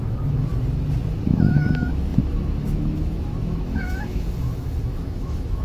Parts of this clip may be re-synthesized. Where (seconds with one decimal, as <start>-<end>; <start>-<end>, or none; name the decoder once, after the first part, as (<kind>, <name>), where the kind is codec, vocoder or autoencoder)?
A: 0.0-0.5 (autoencoder, DAC-VAE); 1.1-5.6